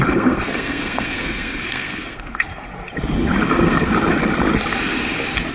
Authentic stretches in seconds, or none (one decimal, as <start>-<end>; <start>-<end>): 2.5-3.5; 3.9-5.5